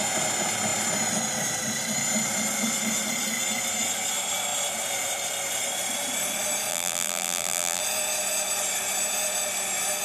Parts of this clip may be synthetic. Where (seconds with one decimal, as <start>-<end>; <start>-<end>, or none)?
6.7-7.8